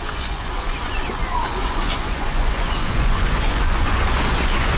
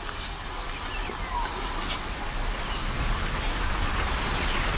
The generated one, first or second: first